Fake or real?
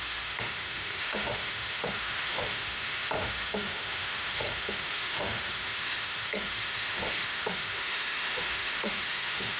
fake